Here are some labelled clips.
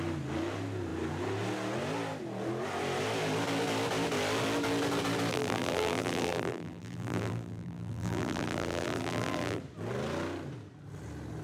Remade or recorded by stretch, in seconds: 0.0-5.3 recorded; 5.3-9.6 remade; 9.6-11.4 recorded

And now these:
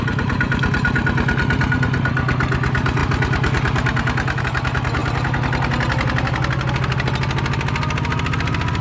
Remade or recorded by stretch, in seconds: 0.0-8.8 recorded

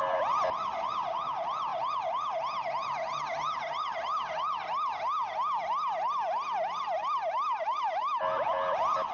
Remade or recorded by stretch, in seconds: 0.0-9.1 recorded

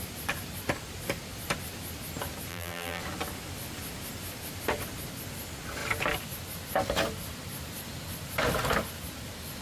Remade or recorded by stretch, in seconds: 0.0-2.5 recorded; 2.5-3.0 remade; 3.0-9.6 recorded

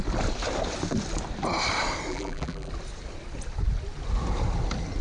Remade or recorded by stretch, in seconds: 0.0-2.1 recorded; 2.1-2.7 remade; 2.7-5.0 recorded